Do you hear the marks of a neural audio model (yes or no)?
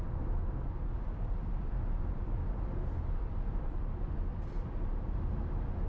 no